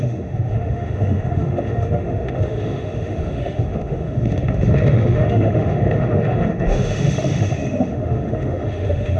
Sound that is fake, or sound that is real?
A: fake